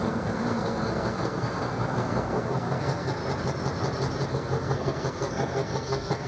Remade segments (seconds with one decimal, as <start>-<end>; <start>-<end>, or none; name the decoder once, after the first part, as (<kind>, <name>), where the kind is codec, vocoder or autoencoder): 0.0-3.2 (codec, SNAC); 4.3-6.3